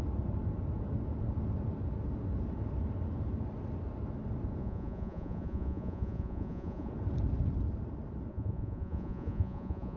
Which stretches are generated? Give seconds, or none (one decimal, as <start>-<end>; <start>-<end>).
4.6-6.9; 8.3-10.0

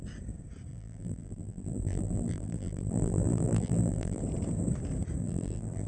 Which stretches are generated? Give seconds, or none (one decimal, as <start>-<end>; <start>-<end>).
0.7-4.2; 5.2-5.9

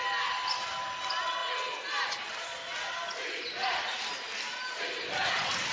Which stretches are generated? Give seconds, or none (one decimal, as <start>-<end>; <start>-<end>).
none

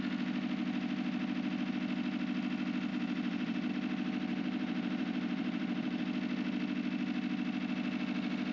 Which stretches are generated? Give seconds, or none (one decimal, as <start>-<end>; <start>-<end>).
2.9-3.7; 4.3-6.0

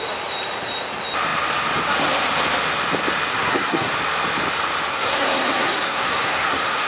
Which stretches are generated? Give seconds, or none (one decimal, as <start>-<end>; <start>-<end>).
3.3-3.9; 4.9-6.9

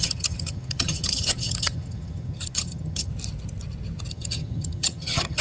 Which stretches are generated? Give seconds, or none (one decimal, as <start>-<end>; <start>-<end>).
0.0-3.1; 4.1-5.4

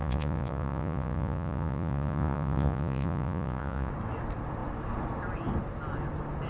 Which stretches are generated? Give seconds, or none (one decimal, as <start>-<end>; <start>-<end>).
0.0-3.9